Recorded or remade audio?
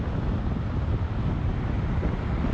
recorded